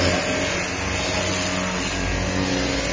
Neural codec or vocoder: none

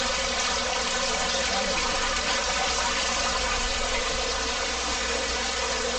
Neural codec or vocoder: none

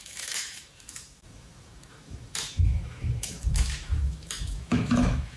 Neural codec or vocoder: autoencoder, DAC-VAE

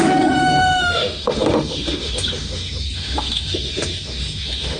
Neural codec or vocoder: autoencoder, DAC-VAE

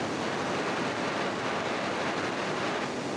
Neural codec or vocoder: none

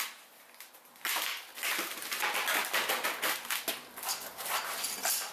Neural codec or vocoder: none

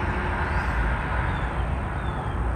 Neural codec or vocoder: none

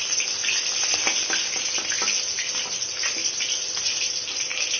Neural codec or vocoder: none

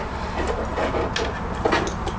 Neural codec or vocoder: none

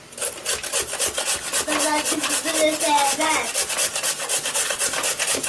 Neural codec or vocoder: none